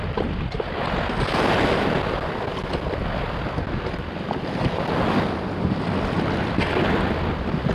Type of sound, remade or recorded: recorded